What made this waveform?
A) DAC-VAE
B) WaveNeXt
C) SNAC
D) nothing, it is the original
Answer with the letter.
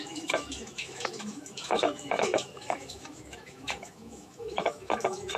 A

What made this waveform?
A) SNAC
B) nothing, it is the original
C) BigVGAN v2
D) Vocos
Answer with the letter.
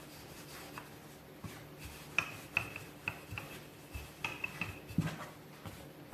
B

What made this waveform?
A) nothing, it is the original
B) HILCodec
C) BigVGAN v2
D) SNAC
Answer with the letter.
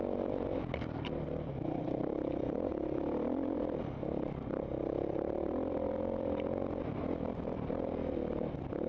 C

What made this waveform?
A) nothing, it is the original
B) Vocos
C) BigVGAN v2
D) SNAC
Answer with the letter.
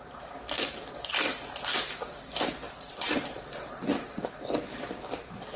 A